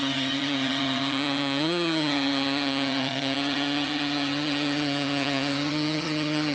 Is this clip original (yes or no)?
no